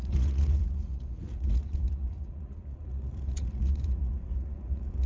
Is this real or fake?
fake